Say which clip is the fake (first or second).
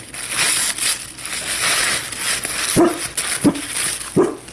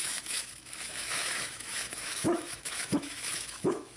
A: second